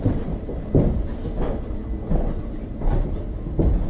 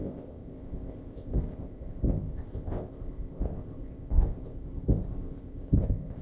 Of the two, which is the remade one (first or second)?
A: second